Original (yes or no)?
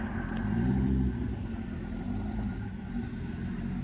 yes